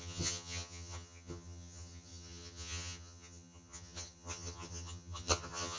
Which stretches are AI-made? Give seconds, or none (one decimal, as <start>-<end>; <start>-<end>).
0.0-5.8